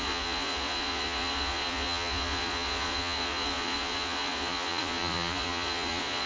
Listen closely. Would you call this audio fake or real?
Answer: fake